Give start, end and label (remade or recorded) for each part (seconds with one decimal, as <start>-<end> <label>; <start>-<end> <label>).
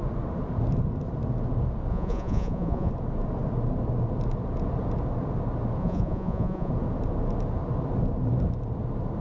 0.0-1.9 recorded; 1.9-2.9 remade; 2.9-5.8 recorded; 5.8-6.7 remade; 6.7-9.2 recorded